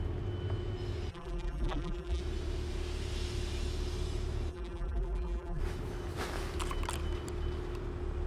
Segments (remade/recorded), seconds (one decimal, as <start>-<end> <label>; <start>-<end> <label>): 0.0-1.1 recorded; 1.1-2.2 remade; 2.2-4.5 recorded; 4.5-5.6 remade; 5.6-8.3 recorded